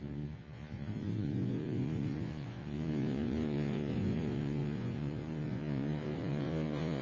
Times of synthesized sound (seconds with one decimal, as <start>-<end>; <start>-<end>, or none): 0.0-7.0